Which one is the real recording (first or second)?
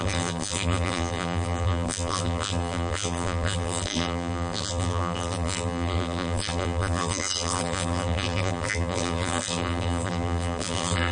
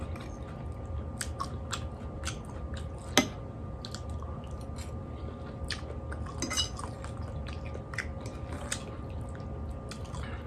second